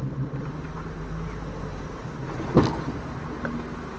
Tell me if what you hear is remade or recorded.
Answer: recorded